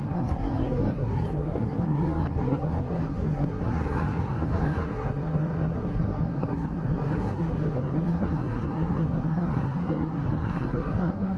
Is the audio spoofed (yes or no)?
yes